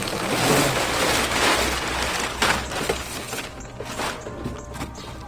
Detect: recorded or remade recorded